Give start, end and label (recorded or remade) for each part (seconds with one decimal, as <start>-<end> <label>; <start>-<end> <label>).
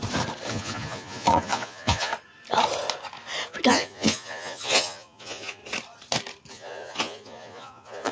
0.0-0.5 recorded; 0.5-2.1 remade; 2.1-3.7 recorded; 3.7-5.6 remade; 5.6-6.5 recorded; 6.5-8.1 remade